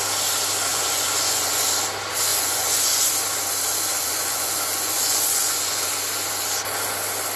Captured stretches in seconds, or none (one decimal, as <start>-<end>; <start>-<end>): 0.0-0.7; 1.6-2.3; 3.1-3.9; 5.9-7.4